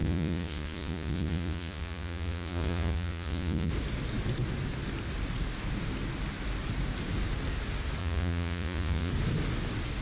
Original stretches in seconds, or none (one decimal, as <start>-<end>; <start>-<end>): 3.7-8.0; 9.1-10.0